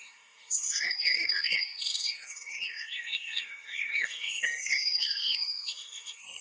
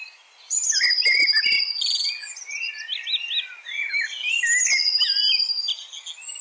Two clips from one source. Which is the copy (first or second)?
first